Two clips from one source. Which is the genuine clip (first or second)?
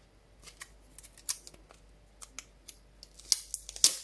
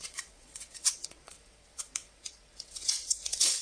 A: first